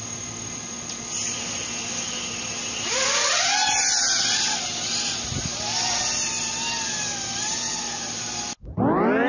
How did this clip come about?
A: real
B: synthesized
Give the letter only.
A